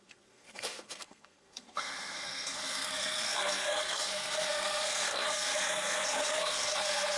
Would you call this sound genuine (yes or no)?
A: no